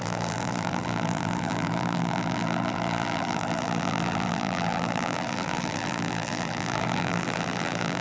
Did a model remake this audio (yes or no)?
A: yes